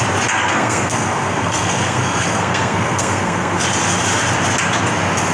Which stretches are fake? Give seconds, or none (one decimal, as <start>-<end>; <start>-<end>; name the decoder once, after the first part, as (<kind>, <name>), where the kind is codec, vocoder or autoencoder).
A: 0.4-3.6 (codec, SNAC)